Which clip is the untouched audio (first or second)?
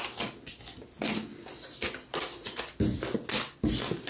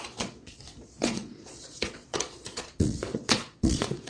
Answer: first